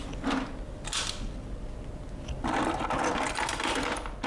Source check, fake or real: real